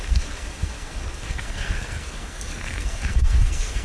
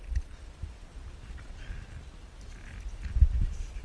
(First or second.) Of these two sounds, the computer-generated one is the first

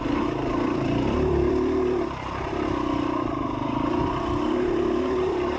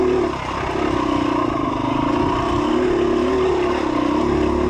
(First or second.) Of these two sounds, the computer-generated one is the first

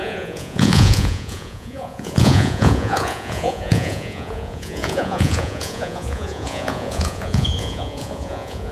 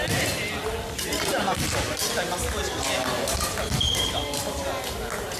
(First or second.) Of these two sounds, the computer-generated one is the first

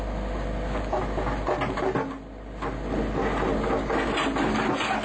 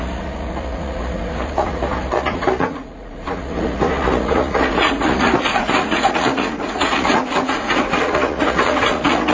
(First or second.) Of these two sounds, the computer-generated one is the second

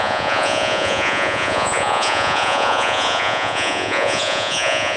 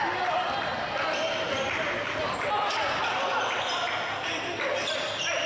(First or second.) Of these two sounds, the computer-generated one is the first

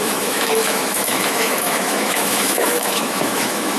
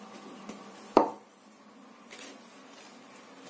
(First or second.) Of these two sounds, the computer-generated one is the first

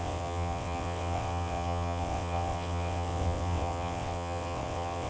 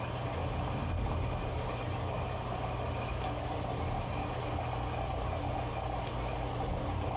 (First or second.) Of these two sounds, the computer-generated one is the first